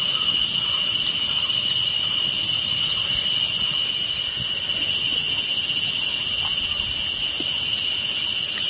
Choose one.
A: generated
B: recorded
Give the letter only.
B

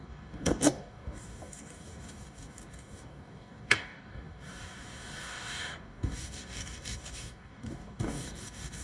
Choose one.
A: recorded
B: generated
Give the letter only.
B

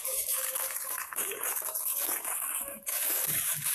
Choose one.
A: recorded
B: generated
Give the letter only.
B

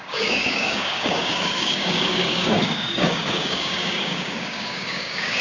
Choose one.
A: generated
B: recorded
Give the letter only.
A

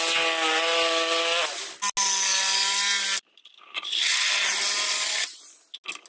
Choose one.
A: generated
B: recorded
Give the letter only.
B